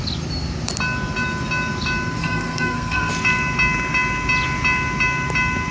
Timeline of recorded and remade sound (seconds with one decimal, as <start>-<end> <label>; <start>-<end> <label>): 0.0-2.2 recorded; 2.2-3.1 remade; 3.1-5.7 recorded